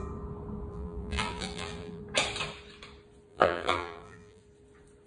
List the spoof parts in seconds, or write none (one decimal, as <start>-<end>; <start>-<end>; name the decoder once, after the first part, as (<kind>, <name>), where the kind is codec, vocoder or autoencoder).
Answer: 0.7-2.0 (vocoder, BigVGAN v2); 3.3-4.4